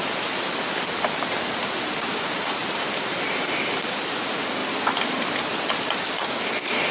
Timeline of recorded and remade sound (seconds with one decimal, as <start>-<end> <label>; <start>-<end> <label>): 0.0-2.6 recorded; 2.6-4.1 remade; 4.1-6.9 recorded